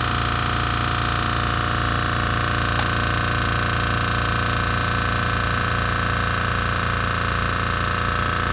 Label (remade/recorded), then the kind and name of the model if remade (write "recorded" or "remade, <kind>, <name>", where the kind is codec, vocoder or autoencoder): recorded